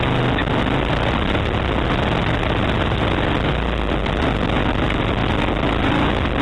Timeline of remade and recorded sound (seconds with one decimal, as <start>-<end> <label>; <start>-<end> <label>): 0.0-6.4 recorded